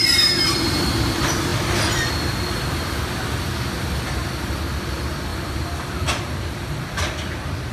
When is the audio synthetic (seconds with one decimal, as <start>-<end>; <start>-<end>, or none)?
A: 5.3-6.8